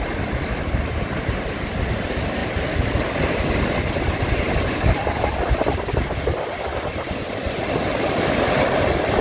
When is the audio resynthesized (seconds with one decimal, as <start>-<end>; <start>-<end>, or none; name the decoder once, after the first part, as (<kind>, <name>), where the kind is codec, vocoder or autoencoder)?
none